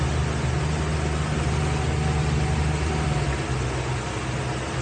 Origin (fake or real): real